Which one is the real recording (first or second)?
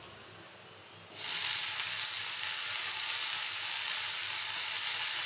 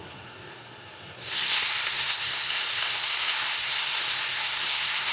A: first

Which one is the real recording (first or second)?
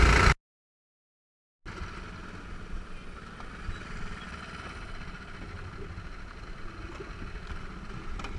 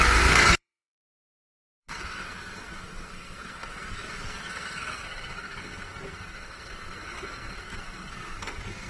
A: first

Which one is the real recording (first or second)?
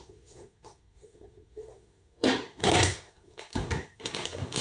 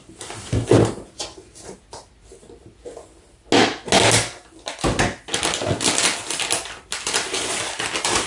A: second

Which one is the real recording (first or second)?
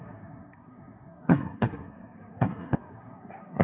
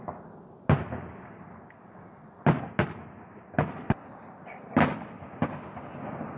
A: second